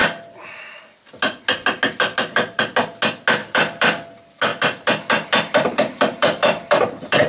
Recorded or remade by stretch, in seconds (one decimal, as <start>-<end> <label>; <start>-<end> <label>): 0.0-3.4 recorded; 3.4-4.0 remade; 4.0-4.5 recorded; 4.5-7.3 remade